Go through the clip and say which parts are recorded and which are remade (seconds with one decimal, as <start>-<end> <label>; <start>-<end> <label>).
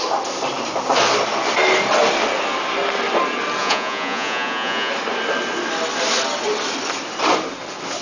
0.0-3.6 recorded; 3.6-4.9 remade; 4.9-8.0 recorded